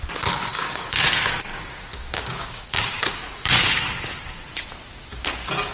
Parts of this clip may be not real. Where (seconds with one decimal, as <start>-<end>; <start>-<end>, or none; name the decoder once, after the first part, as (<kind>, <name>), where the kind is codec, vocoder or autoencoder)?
0.5-3.8 (codec, DAC)